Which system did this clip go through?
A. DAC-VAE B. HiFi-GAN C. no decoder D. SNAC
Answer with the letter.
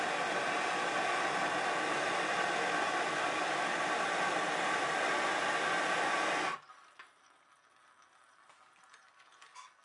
C